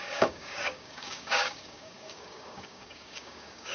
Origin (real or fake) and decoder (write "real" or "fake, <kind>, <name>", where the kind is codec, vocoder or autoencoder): fake, codec, DAC